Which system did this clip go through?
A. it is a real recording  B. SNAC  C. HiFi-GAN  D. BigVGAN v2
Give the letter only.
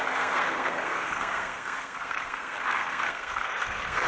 B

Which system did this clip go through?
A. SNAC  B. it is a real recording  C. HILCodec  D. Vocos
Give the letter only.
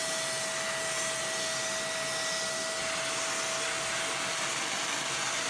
B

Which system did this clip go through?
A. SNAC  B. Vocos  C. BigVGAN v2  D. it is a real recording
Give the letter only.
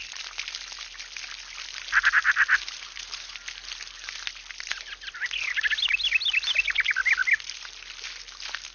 D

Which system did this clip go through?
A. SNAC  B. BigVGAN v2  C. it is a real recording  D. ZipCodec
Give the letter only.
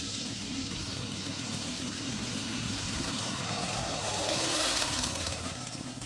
A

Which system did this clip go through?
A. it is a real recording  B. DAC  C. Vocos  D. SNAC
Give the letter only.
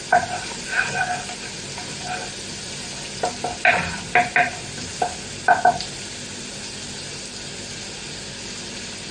A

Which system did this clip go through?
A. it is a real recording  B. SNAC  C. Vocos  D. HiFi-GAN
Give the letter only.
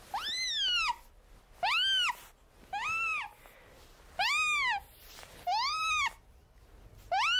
A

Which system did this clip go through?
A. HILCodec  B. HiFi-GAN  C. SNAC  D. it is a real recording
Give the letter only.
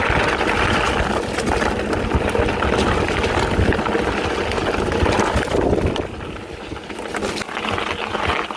D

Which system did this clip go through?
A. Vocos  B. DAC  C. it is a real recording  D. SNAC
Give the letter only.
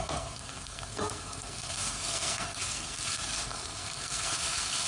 D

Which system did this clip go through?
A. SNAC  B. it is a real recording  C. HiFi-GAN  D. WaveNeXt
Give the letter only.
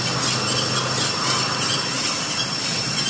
B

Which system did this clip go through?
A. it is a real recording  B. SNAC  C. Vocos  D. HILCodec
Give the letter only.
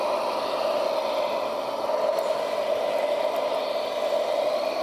A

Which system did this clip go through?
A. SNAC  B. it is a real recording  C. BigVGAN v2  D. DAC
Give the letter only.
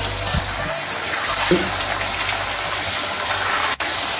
B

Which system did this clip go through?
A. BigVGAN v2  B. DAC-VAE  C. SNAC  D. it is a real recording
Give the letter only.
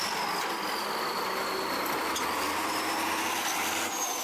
D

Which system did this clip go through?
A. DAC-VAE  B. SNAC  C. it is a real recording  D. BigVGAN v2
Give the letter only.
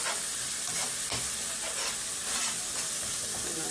C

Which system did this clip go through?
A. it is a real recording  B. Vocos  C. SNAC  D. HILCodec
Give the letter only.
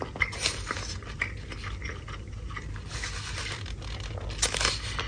A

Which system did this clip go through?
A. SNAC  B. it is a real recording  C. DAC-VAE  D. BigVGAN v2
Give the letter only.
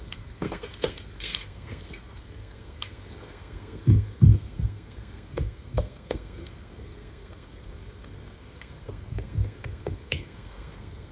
A